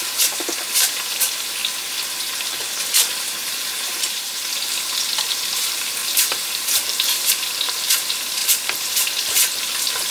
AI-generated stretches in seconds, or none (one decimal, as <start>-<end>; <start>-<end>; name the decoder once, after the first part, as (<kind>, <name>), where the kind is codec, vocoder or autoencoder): 3.4-4.3 (vocoder, BigVGAN v2); 6.0-7.3